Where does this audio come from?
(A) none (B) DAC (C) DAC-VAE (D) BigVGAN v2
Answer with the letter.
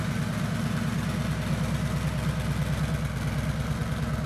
A